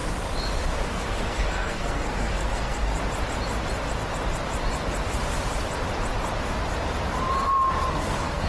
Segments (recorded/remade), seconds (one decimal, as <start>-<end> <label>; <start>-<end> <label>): 0.0-0.9 recorded; 0.9-2.9 remade; 2.9-7.9 recorded; 7.9-8.5 remade